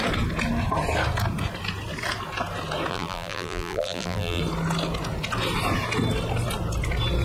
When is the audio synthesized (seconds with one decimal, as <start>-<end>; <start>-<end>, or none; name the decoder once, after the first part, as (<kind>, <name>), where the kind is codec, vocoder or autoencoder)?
2.9-4.4 (vocoder, BigVGAN v2)